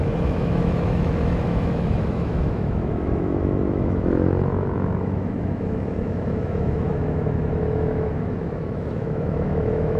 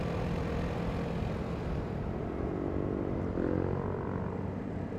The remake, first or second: first